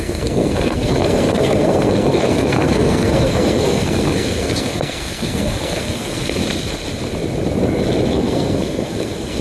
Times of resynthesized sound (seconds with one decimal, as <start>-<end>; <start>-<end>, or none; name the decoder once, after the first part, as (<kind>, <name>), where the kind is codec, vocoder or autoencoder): 0.0-6.4 (codec, SNAC); 8.1-9.4